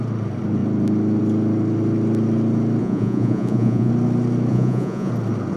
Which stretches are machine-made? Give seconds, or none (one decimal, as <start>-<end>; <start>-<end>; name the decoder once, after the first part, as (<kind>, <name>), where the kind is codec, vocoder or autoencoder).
2.8-3.9 (vocoder, Vocos); 4.5-5.1